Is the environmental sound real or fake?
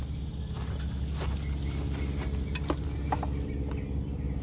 real